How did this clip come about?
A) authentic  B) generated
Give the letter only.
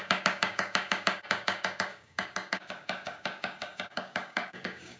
B